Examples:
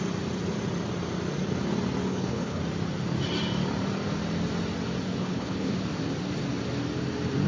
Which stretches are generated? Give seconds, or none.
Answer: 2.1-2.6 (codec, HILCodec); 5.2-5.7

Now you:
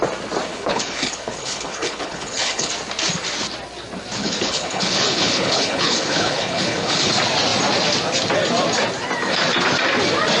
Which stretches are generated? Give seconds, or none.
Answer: 0.5-2.7 (codec, HILCodec); 4.2-7.1

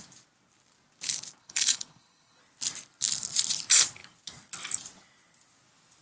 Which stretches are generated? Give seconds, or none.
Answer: 1.4-2.4 (codec, HILCodec)

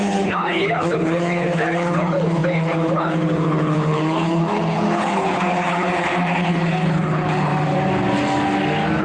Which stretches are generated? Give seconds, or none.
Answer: 0.0-7.5 (codec, HILCodec)

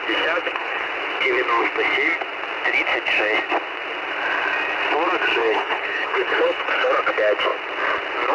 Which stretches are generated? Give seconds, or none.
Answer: 0.4-0.9 (codec, HILCodec); 5.4-6.9